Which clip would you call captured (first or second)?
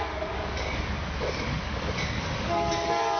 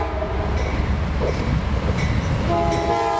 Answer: second